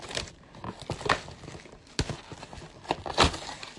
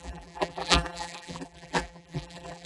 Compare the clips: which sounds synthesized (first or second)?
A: second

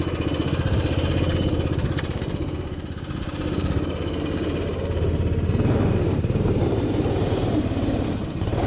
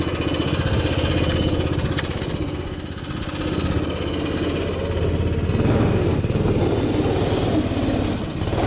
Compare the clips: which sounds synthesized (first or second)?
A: first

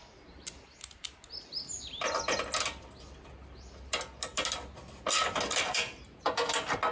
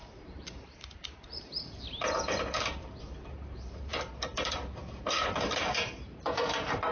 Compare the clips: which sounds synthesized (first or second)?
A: second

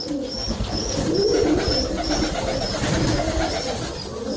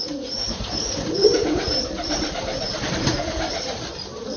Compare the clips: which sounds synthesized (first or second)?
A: second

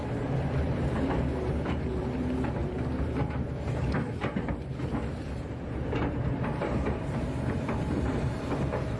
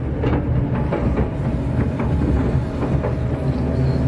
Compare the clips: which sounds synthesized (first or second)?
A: first